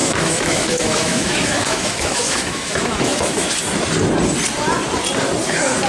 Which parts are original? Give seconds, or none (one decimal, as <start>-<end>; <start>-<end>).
3.5-5.9